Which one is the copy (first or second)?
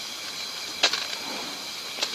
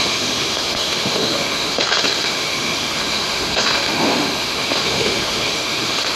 second